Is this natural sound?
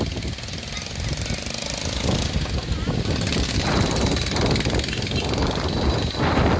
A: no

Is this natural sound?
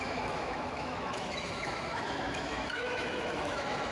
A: no